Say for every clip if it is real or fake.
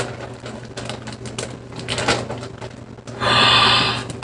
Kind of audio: real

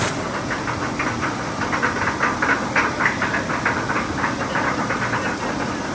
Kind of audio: real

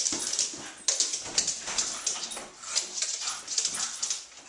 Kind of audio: real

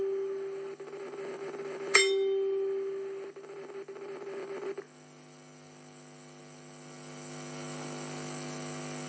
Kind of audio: real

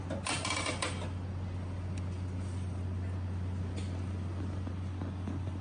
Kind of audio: real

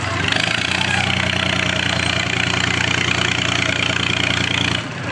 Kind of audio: real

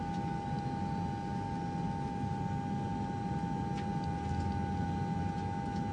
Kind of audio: real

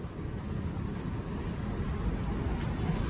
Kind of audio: real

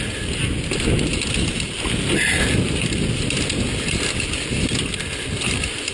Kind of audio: real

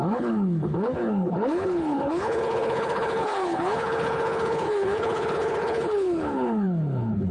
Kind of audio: fake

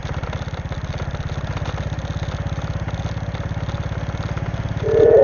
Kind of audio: real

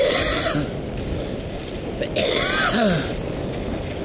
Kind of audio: real